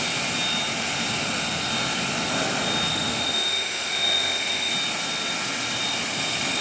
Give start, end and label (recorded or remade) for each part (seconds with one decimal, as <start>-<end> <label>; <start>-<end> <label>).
0.0-2.9 recorded; 2.9-4.7 remade; 4.7-6.6 recorded